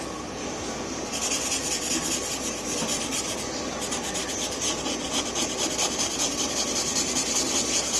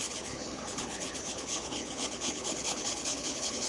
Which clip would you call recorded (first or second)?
first